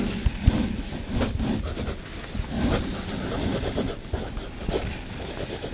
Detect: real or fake real